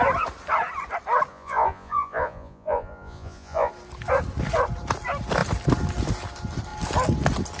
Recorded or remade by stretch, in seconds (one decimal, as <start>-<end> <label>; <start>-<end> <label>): 0.0-1.3 recorded; 1.3-3.7 remade; 3.7-7.6 recorded